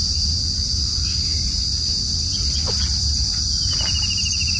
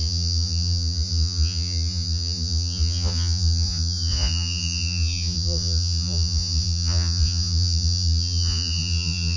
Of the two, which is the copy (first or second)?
second